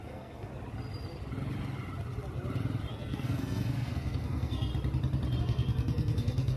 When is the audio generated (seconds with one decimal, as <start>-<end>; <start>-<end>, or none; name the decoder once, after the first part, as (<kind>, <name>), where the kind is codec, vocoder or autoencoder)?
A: 0.0-0.5 (codec, SNAC); 2.9-4.7; 5.4-6.6